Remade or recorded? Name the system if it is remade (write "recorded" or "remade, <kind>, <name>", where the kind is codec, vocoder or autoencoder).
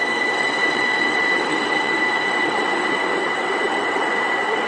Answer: remade, vocoder, WaveNeXt